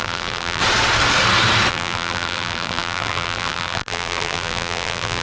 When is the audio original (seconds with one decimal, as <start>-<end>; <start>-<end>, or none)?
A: 0.6-1.7